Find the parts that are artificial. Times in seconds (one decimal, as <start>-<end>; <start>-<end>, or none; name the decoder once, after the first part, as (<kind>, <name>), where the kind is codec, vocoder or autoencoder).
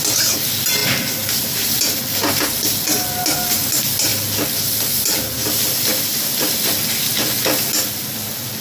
none